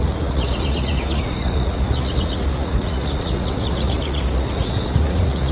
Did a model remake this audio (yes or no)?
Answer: yes